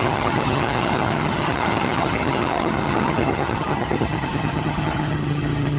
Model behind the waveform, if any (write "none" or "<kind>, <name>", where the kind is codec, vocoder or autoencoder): vocoder, HiFi-GAN